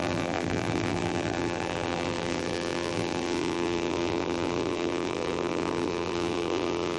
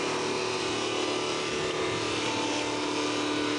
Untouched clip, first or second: second